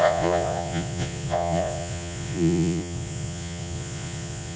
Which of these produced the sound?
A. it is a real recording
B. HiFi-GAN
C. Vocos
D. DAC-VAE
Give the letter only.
C